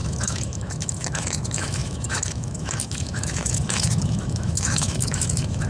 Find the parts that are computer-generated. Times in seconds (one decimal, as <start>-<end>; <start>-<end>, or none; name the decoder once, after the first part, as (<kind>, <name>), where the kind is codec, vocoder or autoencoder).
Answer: 0.0-5.7 (autoencoder, DAC-VAE)